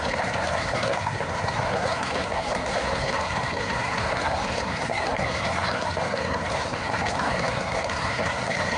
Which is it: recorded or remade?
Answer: remade